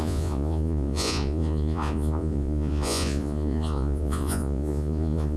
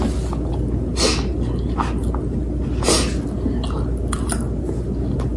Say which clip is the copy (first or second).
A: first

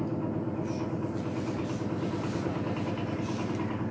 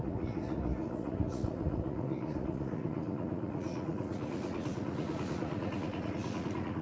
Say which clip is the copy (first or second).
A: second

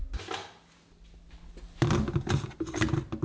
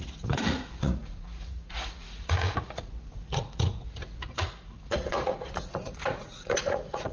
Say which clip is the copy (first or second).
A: second